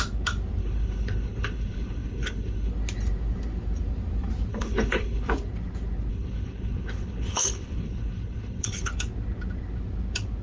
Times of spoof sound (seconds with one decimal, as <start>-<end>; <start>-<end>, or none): 0.6-2.7; 4.5-5.3; 6.1-8.9